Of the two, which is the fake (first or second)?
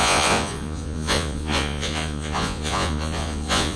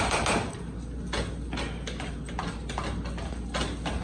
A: first